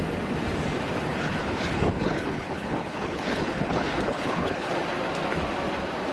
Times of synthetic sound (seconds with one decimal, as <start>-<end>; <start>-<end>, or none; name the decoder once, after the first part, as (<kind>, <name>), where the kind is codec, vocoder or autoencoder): 1.1-4.7 (codec, HILCodec)